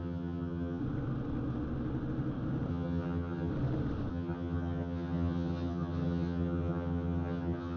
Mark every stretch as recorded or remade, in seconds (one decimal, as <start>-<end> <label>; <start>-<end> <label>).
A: 0.0-0.8 remade; 0.8-2.7 recorded; 2.7-3.5 remade; 3.5-4.1 recorded; 4.1-7.8 remade

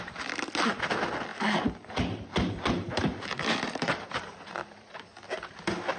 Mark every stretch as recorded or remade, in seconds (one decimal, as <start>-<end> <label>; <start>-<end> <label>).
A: 0.0-1.3 recorded; 1.3-4.9 remade; 4.9-6.0 recorded

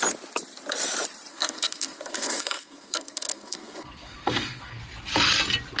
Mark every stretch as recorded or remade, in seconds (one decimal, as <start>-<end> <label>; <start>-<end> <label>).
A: 0.0-1.3 recorded; 1.3-4.8 remade; 4.8-5.8 recorded

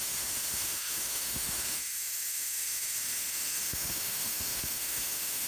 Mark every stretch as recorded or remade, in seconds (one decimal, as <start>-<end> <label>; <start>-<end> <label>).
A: 0.0-5.5 remade

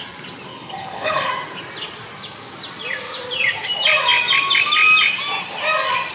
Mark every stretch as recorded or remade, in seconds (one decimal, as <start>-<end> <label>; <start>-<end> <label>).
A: 0.0-0.5 recorded; 0.5-1.3 remade; 1.3-6.1 recorded

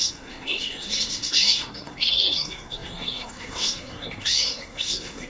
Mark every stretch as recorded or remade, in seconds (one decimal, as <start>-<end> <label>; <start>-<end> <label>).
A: 0.0-5.3 remade

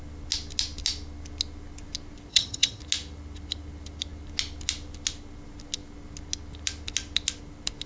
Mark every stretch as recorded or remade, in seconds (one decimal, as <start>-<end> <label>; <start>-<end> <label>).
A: 0.0-2.3 recorded; 2.3-2.8 remade; 2.8-7.9 recorded